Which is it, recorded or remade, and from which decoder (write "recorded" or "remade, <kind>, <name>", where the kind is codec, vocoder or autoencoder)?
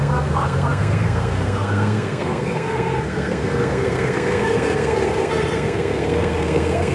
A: remade, codec, SNAC